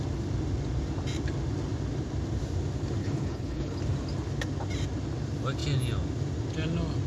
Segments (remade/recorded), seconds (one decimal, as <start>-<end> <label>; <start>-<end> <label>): 0.0-3.0 recorded; 3.0-3.8 remade; 3.8-7.1 recorded